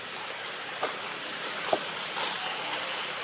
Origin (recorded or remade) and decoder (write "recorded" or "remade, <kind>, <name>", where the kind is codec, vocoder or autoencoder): recorded